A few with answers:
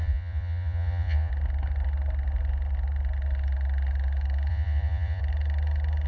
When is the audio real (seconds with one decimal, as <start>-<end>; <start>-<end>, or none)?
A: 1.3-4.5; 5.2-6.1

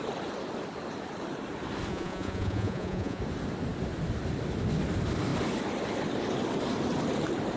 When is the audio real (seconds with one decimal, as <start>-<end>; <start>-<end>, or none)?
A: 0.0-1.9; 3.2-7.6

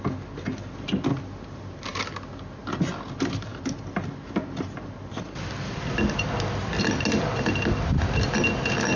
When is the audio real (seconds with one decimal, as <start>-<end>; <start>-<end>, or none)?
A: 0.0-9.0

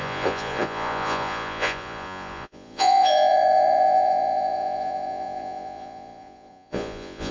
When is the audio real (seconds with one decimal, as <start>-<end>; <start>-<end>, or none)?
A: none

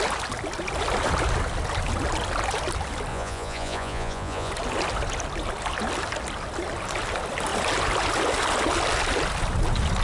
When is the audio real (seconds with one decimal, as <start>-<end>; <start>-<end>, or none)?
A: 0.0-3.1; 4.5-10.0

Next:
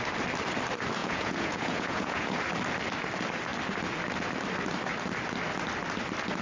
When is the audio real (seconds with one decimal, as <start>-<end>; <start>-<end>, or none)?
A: 0.0-1.0; 2.4-6.4

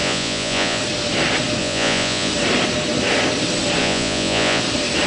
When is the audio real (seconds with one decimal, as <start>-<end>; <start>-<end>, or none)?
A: 0.8-1.6; 2.3-3.8; 4.6-5.1

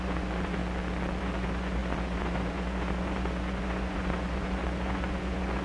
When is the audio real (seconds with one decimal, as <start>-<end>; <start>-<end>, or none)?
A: 0.6-1.2